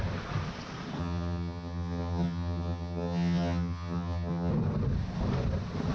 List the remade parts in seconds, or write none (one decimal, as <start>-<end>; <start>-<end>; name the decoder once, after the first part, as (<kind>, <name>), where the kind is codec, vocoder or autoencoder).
1.0-4.5 (vocoder, HiFi-GAN)